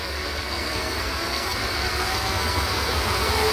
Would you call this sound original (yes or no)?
no